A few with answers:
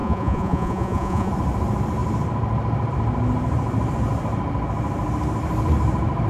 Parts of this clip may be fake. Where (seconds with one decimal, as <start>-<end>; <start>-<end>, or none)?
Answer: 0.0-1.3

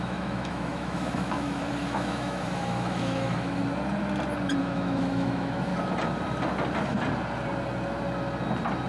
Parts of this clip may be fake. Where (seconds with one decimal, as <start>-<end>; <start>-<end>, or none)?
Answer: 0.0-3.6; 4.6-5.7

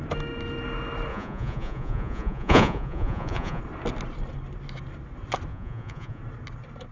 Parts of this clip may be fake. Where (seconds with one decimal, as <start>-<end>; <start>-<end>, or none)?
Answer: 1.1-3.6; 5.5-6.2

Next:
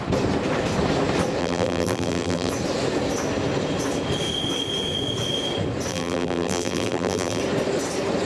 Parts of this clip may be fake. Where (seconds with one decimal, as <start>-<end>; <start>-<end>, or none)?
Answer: 1.4-2.5; 5.9-7.4